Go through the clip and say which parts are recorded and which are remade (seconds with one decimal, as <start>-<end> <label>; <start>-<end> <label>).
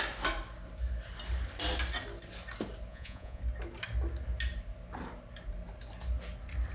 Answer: 0.0-2.9 recorded; 2.9-3.4 remade; 3.4-6.7 recorded